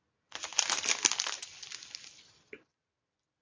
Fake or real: real